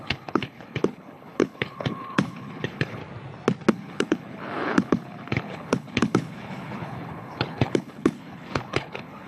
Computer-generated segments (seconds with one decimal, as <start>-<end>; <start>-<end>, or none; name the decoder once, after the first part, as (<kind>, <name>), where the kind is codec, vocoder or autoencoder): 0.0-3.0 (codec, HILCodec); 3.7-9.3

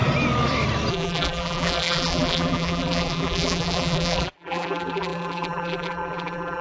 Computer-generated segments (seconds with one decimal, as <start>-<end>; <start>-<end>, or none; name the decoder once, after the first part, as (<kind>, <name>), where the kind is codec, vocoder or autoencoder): 0.9-6.6 (vocoder, BigVGAN v2)

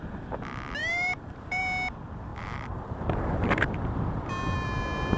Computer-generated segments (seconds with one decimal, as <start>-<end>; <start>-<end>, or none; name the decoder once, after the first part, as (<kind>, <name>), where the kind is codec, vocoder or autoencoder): 0.8-1.6 (vocoder, BigVGAN v2); 2.3-4.3

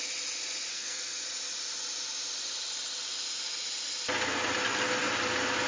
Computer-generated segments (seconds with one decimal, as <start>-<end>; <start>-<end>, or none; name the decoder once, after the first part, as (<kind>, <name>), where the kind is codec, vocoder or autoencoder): 0.7-1.2 (codec, SNAC)